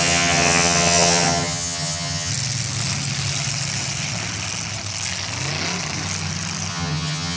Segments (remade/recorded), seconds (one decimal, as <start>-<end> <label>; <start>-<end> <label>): 0.0-2.3 remade; 2.3-6.7 recorded; 6.7-7.4 remade

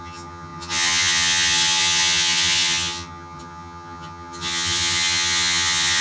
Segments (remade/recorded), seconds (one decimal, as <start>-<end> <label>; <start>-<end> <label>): 0.0-6.0 remade

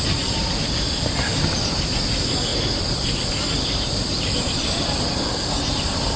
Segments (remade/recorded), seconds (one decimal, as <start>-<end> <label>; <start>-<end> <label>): 0.0-6.2 recorded

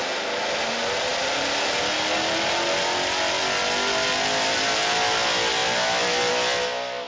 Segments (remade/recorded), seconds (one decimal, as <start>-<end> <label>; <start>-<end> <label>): 0.0-7.1 recorded

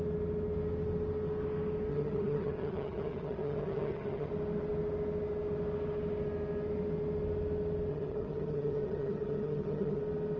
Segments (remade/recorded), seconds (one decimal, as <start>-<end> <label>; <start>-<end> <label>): 0.0-1.9 recorded; 1.9-4.3 remade; 4.3-7.9 recorded; 7.9-10.0 remade; 10.0-10.4 recorded

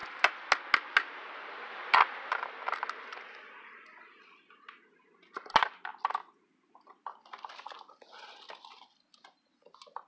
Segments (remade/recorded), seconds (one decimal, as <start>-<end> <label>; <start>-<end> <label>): 0.0-10.1 recorded

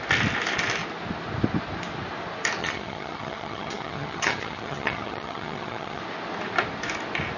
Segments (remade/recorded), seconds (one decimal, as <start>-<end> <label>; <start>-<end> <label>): 0.0-2.6 recorded; 2.6-6.0 remade; 6.0-7.4 recorded

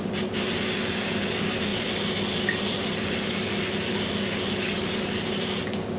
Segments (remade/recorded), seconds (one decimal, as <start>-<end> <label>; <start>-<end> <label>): 0.0-6.0 recorded